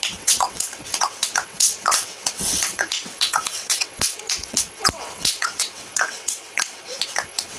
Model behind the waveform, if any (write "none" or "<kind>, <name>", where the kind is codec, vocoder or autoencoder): vocoder, WaveNeXt